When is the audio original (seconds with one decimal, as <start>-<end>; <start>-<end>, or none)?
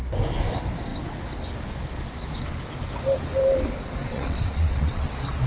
0.0-4.0; 5.1-5.5